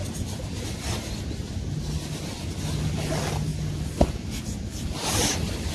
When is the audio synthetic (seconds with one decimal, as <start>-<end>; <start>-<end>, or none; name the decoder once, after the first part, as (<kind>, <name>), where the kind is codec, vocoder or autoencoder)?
none